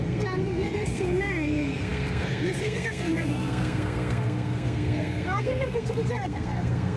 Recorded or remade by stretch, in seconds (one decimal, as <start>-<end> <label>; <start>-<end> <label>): 0.0-7.0 remade